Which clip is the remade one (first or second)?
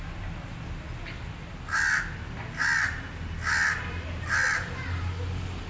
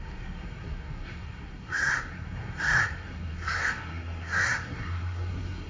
second